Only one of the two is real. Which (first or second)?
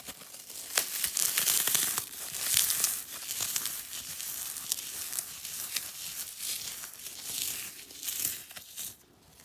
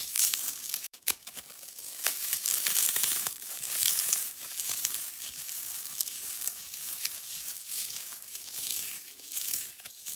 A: first